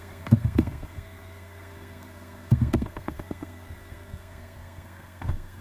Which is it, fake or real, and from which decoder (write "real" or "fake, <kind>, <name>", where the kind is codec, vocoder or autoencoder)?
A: fake, codec, SNAC